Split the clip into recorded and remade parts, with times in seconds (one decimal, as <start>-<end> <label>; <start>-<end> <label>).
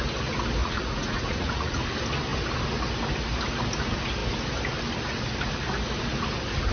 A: 0.0-0.6 recorded; 0.6-1.8 remade; 1.8-6.7 recorded